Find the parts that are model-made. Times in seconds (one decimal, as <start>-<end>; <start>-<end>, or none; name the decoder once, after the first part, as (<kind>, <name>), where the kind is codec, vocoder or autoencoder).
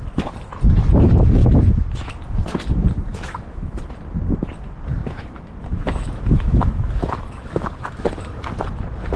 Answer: 1.4-2.1 (autoencoder, DAC-VAE); 3.1-3.8; 5.0-8.3